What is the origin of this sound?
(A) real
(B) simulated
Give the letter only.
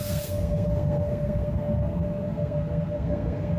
B